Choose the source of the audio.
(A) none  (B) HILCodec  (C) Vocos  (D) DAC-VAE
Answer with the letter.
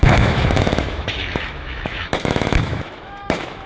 D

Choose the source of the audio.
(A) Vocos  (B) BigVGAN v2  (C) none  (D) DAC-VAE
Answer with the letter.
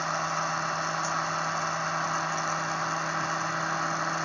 C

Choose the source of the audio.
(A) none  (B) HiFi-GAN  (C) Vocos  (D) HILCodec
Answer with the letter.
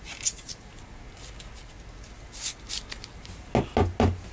A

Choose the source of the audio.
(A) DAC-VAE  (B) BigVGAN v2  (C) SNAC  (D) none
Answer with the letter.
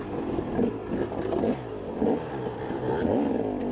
D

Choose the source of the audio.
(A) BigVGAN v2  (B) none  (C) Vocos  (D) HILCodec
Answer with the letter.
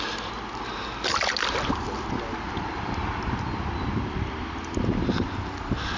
B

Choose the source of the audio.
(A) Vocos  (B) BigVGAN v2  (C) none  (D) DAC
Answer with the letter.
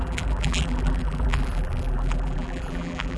B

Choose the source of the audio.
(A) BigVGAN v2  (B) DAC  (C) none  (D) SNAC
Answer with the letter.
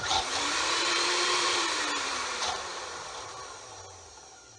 A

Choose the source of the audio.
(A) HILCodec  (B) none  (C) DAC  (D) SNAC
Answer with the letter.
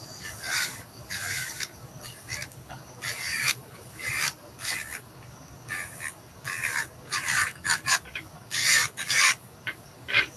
C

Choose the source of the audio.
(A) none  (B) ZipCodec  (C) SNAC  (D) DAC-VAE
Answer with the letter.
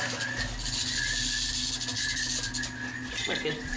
A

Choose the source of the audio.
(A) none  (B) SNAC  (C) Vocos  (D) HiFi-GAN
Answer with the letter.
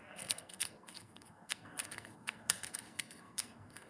B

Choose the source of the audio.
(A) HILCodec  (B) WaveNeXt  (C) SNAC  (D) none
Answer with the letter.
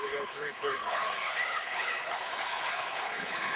A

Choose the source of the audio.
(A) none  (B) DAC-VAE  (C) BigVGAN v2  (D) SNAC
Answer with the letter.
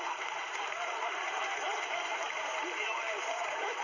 C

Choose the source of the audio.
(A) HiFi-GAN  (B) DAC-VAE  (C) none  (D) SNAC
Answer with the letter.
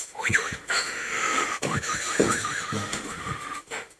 B